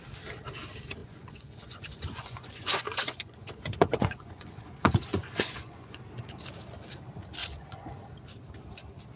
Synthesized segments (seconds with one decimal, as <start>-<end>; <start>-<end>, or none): 1.0-6.0; 7.4-7.9